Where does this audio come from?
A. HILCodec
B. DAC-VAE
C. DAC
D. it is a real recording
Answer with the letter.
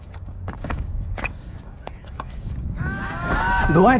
C